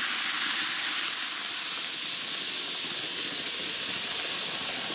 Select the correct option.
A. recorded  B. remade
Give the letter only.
A